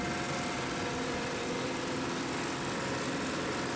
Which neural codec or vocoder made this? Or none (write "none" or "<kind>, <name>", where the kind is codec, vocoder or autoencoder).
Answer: none